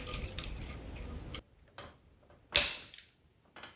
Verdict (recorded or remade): recorded